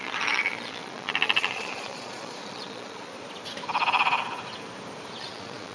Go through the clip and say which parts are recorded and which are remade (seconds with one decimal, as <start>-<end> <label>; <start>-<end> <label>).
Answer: 0.0-3.1 remade; 3.1-5.2 recorded; 5.2-5.7 remade